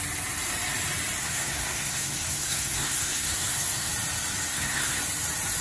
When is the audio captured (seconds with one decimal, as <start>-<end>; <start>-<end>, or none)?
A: 0.0-1.2; 3.9-4.5; 5.0-5.6